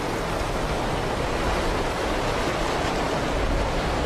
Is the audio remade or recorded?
recorded